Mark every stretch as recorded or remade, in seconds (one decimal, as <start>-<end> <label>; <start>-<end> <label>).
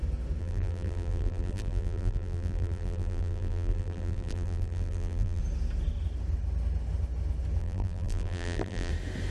0.0-0.4 recorded; 0.4-5.4 remade; 5.4-7.6 recorded; 7.6-8.9 remade; 8.9-9.3 recorded